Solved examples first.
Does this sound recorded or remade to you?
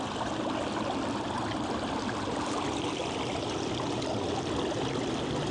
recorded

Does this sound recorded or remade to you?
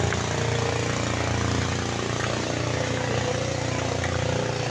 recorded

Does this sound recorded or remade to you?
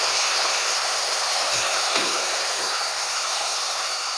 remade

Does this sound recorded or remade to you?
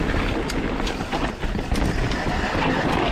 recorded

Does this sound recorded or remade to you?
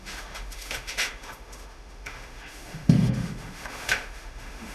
remade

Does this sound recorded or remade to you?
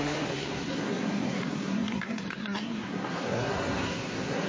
remade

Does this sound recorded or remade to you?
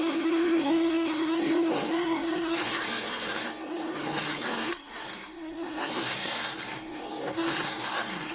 remade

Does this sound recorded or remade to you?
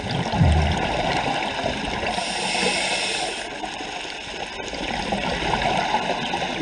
recorded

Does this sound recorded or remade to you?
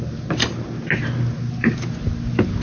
recorded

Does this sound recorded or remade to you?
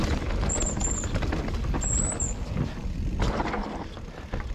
recorded